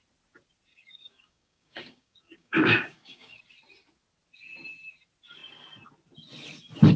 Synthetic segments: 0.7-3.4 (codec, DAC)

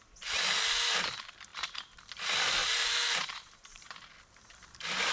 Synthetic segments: 1.5-2.0 (vocoder, BigVGAN v2); 2.6-5.1

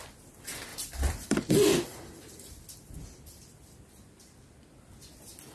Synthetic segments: 0.7-3.5 (vocoder, BigVGAN v2)

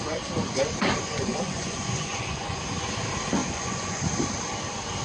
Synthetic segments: 1.3-2.6 (vocoder, Vocos); 3.4-4.0